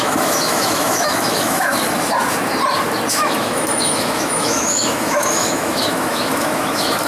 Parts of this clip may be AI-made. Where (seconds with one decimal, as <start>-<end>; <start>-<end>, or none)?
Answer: 0.0-1.7; 3.1-7.1